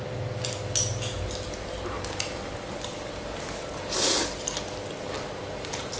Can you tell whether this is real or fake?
real